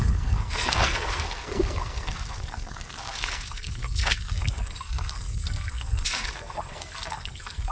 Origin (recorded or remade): remade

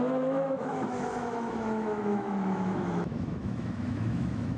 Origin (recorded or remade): remade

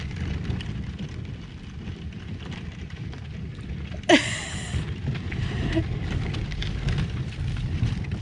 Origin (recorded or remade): remade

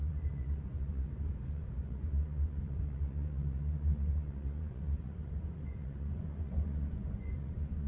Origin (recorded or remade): remade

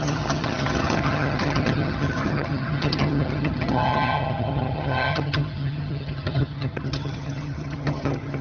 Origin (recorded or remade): remade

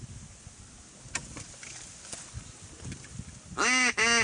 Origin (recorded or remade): recorded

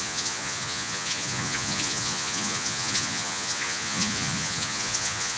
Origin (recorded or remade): remade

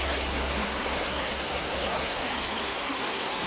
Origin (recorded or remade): remade